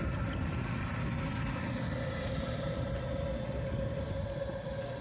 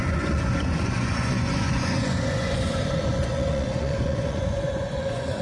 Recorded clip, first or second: first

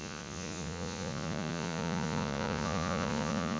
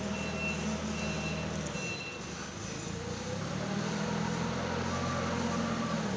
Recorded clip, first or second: second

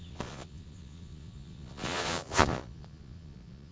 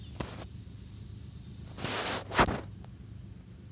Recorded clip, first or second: second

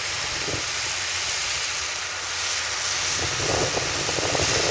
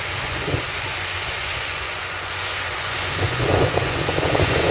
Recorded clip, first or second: first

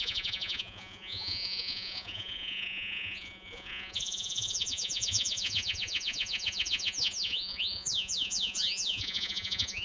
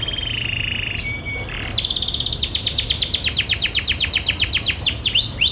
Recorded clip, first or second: second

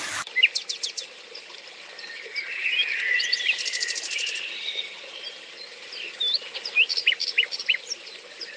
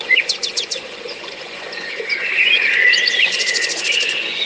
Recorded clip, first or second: first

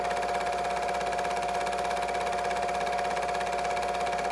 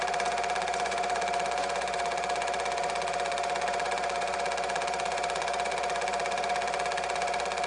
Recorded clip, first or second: first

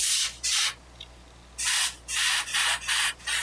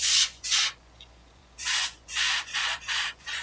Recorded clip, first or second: first